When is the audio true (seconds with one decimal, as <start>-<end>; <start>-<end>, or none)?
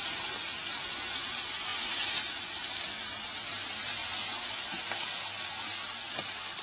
0.0-1.7; 2.2-6.6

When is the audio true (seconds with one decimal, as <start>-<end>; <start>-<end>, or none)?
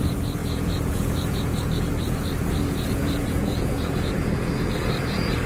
none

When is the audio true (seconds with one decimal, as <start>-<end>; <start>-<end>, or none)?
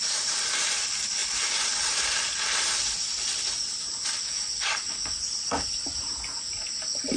0.0-7.2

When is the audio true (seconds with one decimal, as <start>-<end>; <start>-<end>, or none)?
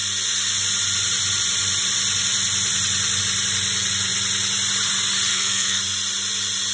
0.0-5.3; 5.8-6.7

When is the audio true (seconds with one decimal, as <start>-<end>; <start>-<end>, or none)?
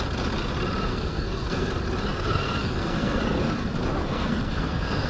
0.0-0.9; 1.7-2.1; 3.2-4.0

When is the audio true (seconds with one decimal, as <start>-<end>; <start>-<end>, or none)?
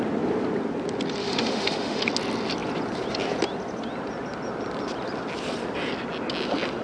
0.0-1.2; 2.0-6.8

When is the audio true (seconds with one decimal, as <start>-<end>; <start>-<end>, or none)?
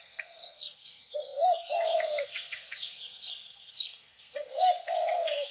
none